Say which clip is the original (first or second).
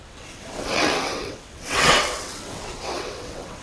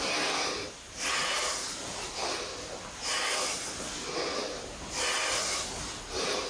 second